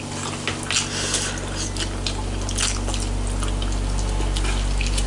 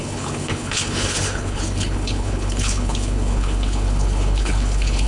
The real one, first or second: first